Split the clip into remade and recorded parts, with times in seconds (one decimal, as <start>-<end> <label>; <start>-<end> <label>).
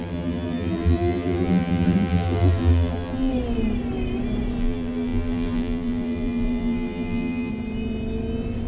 0.0-3.3 remade; 3.3-4.6 recorded; 4.6-7.5 remade; 7.5-8.7 recorded